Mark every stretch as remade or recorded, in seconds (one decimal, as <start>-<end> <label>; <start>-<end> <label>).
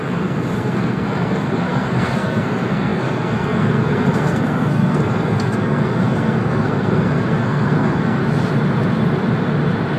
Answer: 0.0-8.2 remade; 8.2-10.0 recorded